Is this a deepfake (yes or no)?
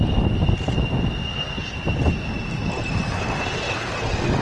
no